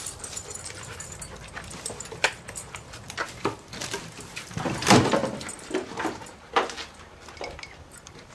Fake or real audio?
fake